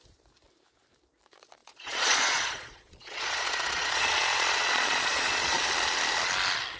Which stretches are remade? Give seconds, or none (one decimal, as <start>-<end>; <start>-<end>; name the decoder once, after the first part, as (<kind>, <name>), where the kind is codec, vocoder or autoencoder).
1.6-5.7 (vocoder, Vocos)